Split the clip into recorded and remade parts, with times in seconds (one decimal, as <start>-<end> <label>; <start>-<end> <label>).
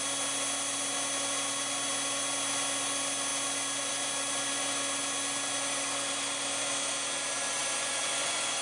0.0-7.6 recorded; 7.6-8.6 remade